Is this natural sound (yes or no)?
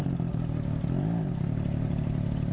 yes